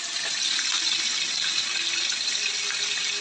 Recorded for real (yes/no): yes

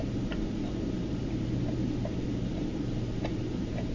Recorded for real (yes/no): no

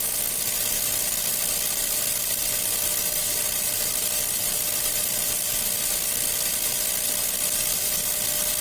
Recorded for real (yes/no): yes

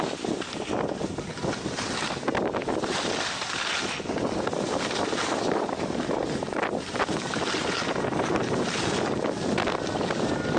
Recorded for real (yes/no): yes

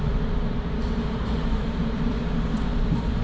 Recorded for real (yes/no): no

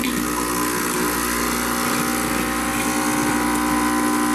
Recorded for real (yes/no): yes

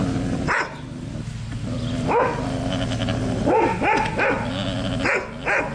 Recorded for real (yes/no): yes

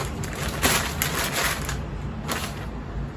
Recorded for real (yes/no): yes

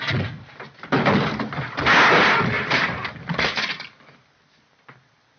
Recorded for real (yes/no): yes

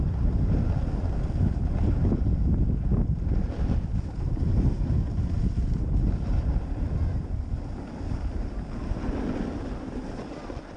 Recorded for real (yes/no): yes